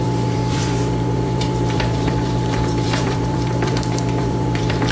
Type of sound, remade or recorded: remade